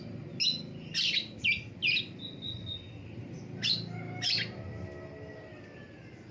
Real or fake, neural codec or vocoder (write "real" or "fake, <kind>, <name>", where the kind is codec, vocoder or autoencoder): real